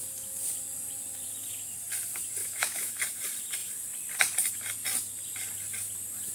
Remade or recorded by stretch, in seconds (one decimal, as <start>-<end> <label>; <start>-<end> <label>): 0.0-2.4 recorded; 2.4-3.0 remade; 3.0-6.3 recorded